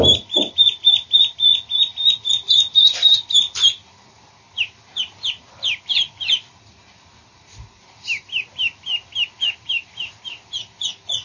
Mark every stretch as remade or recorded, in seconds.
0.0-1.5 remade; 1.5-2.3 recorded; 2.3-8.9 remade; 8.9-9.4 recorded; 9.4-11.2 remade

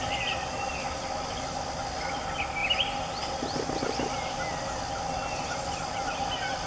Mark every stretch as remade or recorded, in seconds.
0.0-6.7 recorded